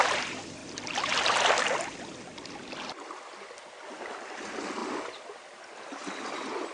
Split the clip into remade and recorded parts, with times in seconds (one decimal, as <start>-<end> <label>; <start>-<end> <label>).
0.0-6.7 recorded